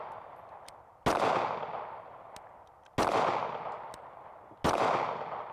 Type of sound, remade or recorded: recorded